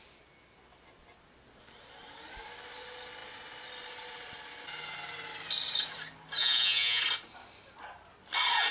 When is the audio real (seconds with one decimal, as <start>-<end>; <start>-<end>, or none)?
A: 0.0-6.4; 7.0-8.7